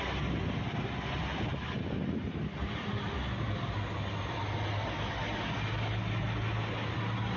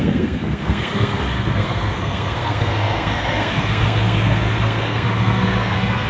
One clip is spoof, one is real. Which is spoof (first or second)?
second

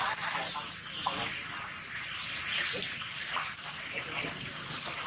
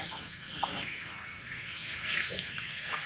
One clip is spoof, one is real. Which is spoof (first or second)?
second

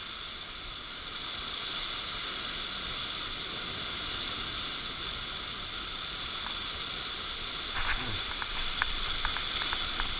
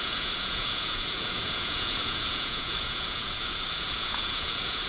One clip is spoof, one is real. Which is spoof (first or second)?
second